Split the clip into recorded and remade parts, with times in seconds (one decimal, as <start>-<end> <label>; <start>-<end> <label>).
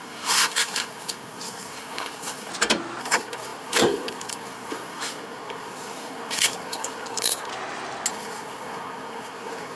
0.0-2.5 remade; 2.5-3.0 recorded; 3.0-7.5 remade; 7.5-8.1 recorded; 8.1-9.8 remade